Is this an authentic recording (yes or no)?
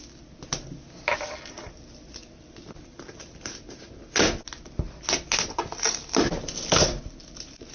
yes